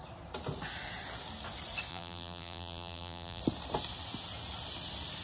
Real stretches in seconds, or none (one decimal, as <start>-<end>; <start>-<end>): 0.0-1.9; 3.4-5.2

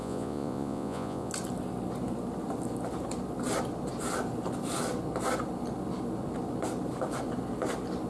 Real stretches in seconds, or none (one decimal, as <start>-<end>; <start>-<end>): 1.3-8.1

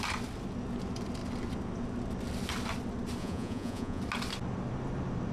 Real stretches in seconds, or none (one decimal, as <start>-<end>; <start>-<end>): 0.0-3.2; 4.0-5.3

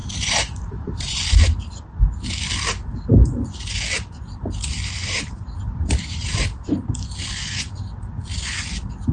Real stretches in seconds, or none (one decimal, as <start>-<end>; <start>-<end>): 1.2-5.0; 6.4-9.1

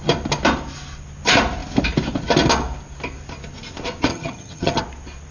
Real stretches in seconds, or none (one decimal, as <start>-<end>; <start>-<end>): 0.0-4.1; 4.8-5.3

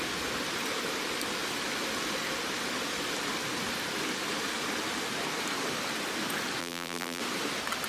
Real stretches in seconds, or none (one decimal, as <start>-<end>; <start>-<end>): 0.0-6.6; 7.2-7.9